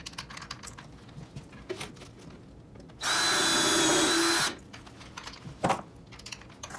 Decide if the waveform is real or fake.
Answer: real